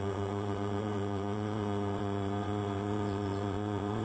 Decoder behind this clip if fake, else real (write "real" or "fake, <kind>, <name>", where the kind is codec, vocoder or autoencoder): fake, vocoder, Vocos